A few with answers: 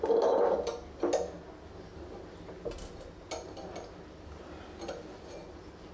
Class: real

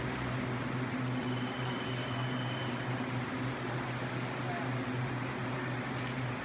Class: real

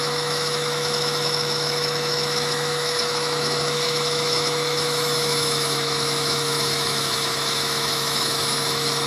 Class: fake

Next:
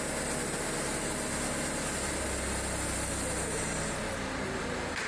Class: real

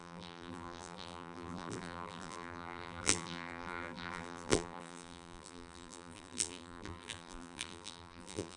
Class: fake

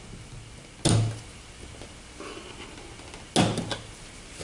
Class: real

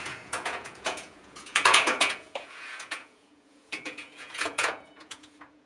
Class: fake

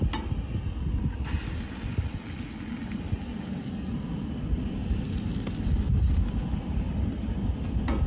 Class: real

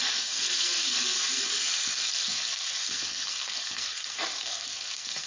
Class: fake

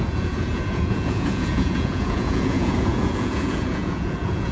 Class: fake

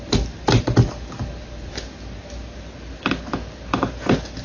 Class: real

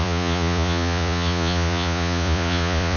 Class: fake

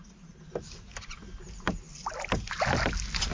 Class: real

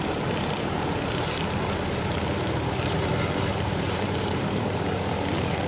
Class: fake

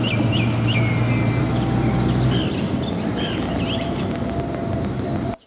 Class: real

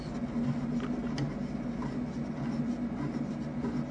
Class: real